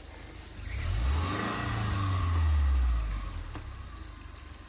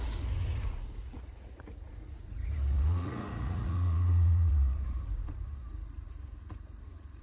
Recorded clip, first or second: first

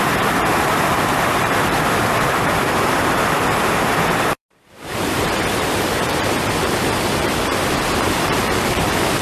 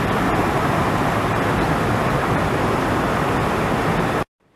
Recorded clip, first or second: second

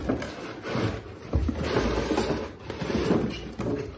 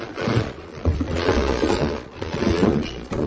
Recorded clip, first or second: first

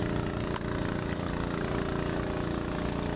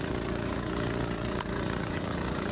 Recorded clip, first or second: first